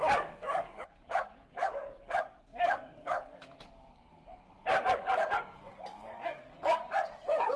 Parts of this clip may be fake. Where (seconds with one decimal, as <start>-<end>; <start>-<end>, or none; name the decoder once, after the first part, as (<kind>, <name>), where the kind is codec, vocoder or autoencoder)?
0.0-7.6 (codec, DAC)